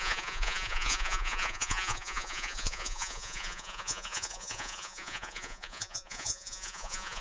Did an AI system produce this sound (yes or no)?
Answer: yes